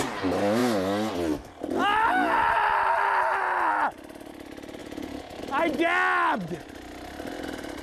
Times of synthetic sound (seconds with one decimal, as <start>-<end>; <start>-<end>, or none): 4.8-5.4